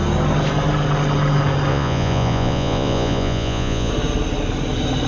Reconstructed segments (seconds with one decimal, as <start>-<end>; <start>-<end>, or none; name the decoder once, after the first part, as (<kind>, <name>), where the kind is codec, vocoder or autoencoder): 1.7-3.9 (vocoder, Vocos)